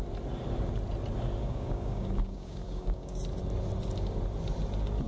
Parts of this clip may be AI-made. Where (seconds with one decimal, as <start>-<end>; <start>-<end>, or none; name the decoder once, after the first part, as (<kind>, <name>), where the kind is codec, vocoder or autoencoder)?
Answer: 1.4-3.2 (codec, DAC)